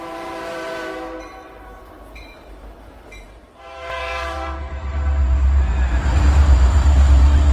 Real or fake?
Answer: fake